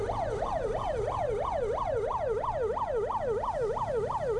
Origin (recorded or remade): recorded